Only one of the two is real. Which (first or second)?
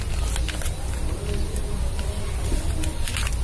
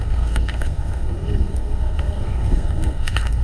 first